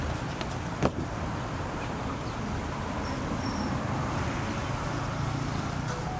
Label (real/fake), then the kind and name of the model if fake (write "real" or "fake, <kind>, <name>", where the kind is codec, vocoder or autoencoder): real